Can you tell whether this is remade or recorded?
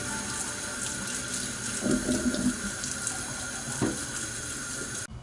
recorded